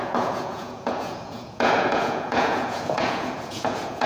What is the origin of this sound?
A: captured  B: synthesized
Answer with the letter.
B